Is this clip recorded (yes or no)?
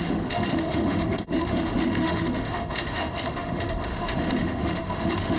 no